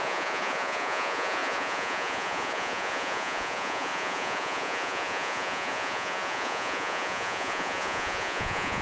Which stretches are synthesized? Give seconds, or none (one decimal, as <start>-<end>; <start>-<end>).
0.0-8.8